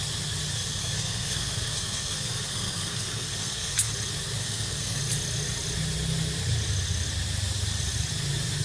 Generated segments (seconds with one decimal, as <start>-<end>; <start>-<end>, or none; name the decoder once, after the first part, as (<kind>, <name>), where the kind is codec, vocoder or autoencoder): 0.8-3.9 (codec, SNAC); 4.4-5.0